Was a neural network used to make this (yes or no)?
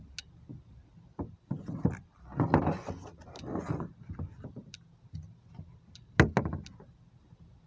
no